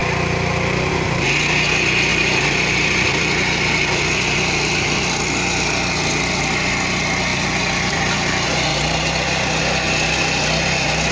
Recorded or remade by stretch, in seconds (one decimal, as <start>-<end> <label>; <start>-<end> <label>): 0.0-2.1 recorded; 2.1-5.0 remade; 5.0-7.3 recorded; 7.3-8.1 remade; 8.1-11.1 recorded